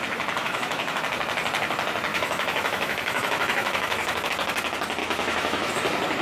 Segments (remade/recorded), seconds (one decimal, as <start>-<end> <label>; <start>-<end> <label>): 0.0-0.4 recorded; 0.4-1.0 remade; 1.0-2.1 recorded; 2.1-4.3 remade; 4.3-5.0 recorded; 5.0-5.7 remade; 5.7-6.2 recorded